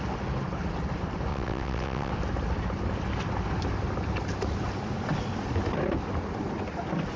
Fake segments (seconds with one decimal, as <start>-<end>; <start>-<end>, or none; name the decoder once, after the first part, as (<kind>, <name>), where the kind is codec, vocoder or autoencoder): 1.3-2.1 (vocoder, WaveNeXt)